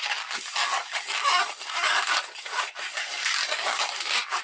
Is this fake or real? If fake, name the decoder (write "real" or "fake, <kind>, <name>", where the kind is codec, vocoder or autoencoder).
fake, codec, DAC